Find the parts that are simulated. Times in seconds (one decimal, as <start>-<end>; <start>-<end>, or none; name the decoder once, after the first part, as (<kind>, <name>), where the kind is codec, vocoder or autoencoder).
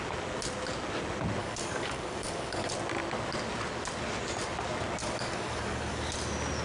1.4-2.7 (codec, DAC); 5.0-6.1